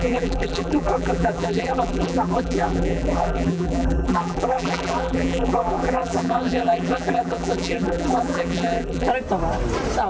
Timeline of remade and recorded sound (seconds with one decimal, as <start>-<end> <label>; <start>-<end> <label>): 0.0-9.1 remade; 9.1-10.1 recorded